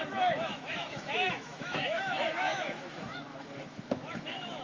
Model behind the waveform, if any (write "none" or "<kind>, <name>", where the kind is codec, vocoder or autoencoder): autoencoder, DAC-VAE